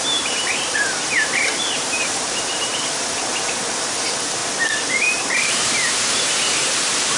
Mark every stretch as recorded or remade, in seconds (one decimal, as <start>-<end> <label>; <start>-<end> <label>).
0.0-3.2 remade; 3.2-3.7 recorded; 3.7-4.4 remade; 4.4-4.9 recorded; 4.9-7.2 remade